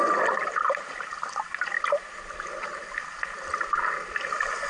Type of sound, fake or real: real